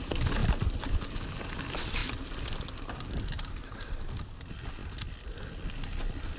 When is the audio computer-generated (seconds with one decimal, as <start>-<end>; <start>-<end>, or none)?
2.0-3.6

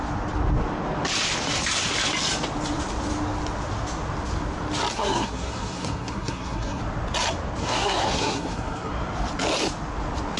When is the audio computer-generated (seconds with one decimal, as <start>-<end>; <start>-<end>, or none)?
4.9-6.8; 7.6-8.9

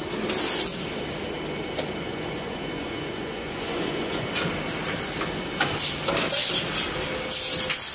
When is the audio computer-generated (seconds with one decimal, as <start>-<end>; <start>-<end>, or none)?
2.1-4.3